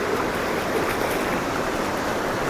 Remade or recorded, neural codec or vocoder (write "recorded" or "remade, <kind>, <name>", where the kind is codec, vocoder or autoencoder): remade, vocoder, BigVGAN v2